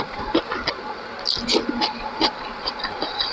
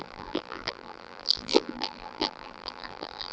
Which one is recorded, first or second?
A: first